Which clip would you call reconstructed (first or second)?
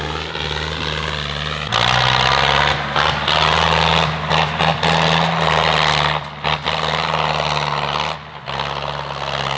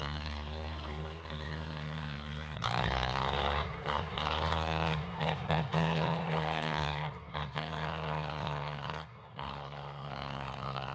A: second